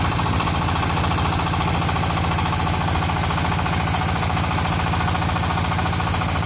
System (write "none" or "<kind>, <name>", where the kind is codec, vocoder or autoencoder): none